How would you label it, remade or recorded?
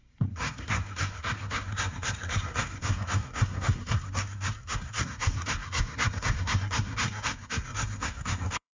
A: remade